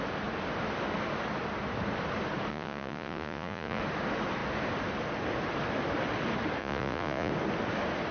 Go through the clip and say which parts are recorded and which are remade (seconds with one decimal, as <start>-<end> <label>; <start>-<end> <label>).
0.0-2.5 recorded; 2.5-3.8 remade; 3.8-6.6 recorded; 6.6-7.3 remade; 7.3-8.1 recorded